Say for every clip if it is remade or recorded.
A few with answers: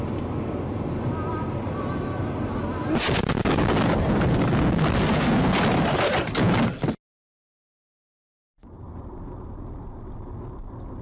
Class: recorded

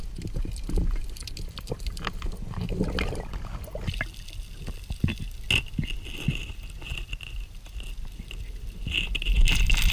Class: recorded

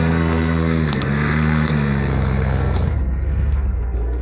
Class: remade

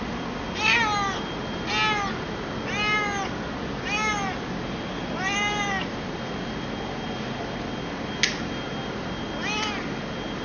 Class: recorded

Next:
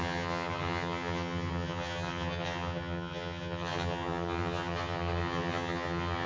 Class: remade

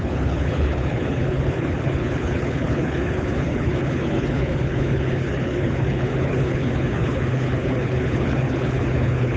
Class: remade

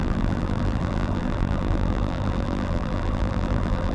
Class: remade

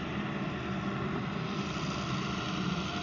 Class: recorded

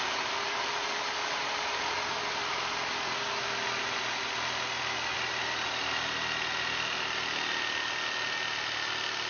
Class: recorded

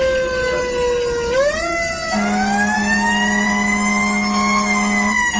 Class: recorded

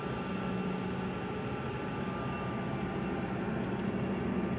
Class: recorded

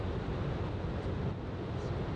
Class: recorded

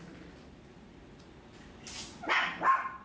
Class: recorded